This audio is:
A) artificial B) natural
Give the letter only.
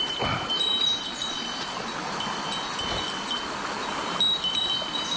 B